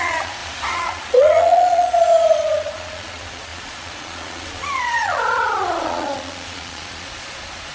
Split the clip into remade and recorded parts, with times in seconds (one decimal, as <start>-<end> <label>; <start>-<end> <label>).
0.0-7.7 remade